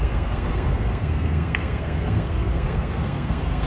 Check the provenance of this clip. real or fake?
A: fake